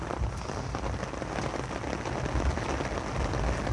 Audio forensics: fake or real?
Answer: real